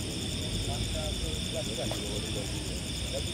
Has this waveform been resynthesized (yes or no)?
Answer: yes